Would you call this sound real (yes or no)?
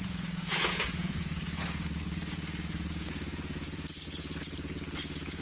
no